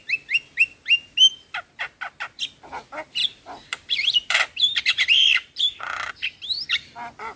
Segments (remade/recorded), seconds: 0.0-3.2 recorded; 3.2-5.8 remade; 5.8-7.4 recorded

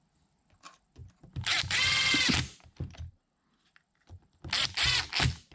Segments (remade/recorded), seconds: 0.0-5.5 recorded

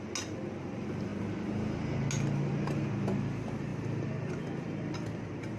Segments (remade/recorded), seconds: 0.0-5.6 recorded

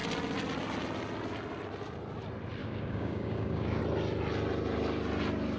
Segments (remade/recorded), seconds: 0.0-2.6 recorded; 2.6-3.8 remade; 3.8-5.6 recorded

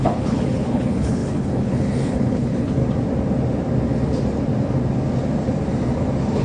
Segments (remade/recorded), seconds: 0.0-2.8 remade; 2.8-6.4 recorded

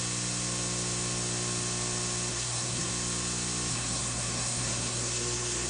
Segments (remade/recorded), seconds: 0.0-2.3 recorded; 2.3-2.9 remade; 2.9-3.7 recorded; 3.7-5.7 remade

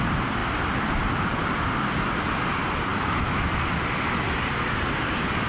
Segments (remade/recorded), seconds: 0.0-5.5 recorded